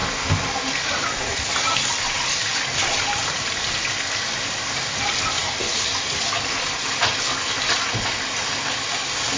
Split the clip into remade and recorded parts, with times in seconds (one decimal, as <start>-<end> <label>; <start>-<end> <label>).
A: 0.0-9.4 recorded